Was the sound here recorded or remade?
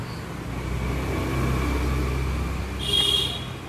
recorded